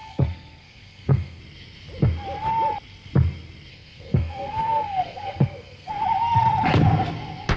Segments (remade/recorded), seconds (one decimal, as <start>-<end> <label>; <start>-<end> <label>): 0.0-1.4 remade; 1.4-3.7 recorded; 3.7-5.9 remade; 5.9-7.6 recorded